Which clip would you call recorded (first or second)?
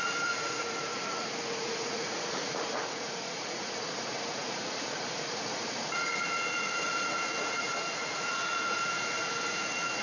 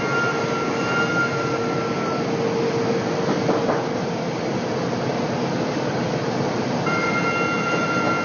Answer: second